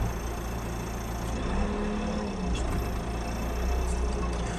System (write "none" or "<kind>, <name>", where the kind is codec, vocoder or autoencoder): none